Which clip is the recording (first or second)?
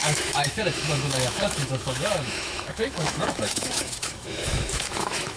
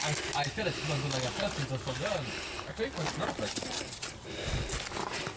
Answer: second